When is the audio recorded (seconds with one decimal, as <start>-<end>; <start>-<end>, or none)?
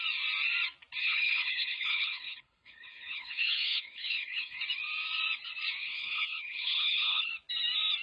0.0-1.0; 4.6-5.8; 7.3-8.0